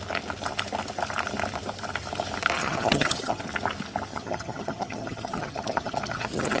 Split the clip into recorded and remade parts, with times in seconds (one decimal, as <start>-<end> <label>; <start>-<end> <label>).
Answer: 0.0-2.6 recorded; 2.6-3.4 remade; 3.4-4.1 recorded; 4.1-6.6 remade